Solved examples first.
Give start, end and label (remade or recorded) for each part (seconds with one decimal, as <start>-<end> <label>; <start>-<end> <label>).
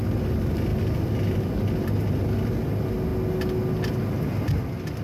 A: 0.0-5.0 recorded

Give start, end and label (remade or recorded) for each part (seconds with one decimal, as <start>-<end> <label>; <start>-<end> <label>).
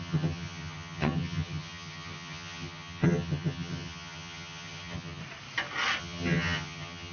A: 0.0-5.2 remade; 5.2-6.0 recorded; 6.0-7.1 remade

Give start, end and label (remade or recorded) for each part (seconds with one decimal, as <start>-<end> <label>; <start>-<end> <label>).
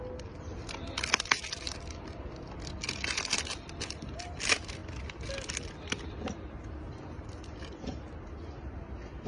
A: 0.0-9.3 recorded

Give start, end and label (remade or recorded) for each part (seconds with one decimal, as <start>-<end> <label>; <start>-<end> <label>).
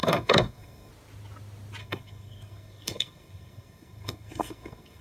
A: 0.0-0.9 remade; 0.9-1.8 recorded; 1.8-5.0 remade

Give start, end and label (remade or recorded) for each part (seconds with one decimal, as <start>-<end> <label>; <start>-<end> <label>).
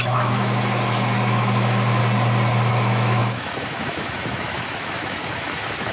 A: 0.0-2.0 remade; 2.0-2.7 recorded; 2.7-5.9 remade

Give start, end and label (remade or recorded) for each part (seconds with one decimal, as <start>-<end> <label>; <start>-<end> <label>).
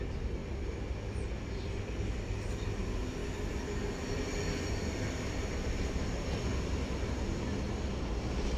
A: 0.0-8.6 recorded